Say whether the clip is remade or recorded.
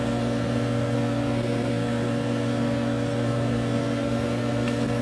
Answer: remade